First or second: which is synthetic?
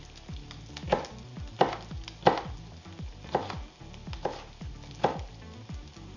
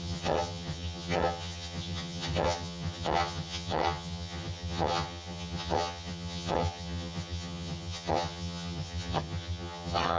second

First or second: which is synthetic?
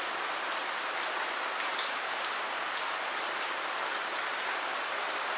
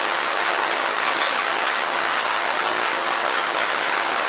second